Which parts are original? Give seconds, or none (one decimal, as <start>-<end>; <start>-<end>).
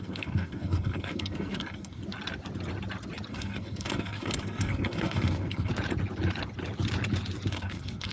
2.0-3.3; 5.7-7.5